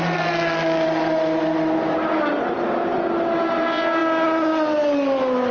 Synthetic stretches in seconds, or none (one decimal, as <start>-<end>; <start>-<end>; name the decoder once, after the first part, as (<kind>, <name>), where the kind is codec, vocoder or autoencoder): none